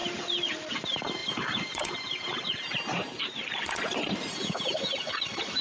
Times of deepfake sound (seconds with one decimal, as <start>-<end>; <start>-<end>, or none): 1.2-4.6